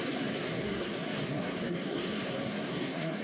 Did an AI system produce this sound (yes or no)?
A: yes